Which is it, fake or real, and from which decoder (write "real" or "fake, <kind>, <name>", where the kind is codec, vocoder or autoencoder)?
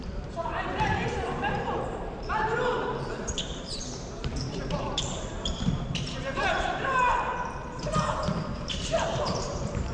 fake, vocoder, BigVGAN v2